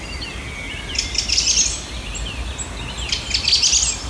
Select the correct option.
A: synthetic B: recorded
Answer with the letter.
B